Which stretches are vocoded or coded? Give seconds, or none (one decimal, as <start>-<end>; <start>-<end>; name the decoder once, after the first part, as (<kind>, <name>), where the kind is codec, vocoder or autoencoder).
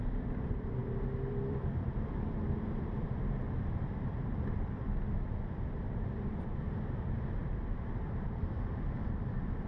0.0-0.8 (vocoder, BigVGAN v2); 1.3-9.7